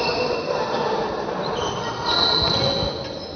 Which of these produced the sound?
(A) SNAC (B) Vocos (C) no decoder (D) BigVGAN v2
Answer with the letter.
C